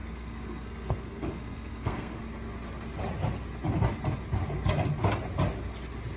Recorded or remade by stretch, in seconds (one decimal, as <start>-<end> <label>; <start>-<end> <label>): 0.0-2.2 remade; 2.2-6.2 recorded